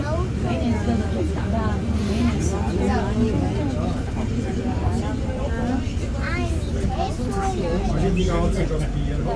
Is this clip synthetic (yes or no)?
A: no